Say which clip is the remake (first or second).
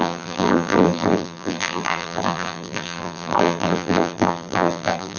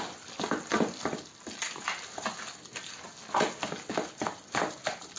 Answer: first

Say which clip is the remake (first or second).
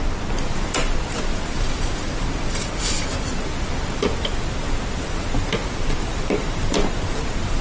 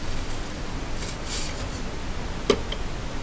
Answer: first